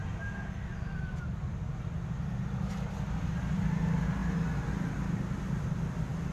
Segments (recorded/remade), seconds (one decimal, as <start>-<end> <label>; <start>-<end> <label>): 0.0-6.3 recorded